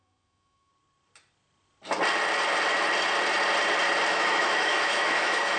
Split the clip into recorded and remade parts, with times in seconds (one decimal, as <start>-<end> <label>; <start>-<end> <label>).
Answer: 0.0-0.7 remade; 0.7-4.1 recorded; 4.1-5.6 remade